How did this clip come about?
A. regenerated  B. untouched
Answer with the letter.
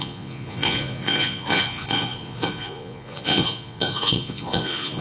A